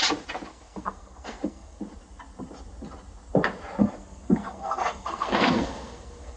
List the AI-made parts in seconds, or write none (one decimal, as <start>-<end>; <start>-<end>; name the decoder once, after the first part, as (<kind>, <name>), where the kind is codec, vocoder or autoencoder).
0.5-1.8 (codec, SNAC); 3.8-6.4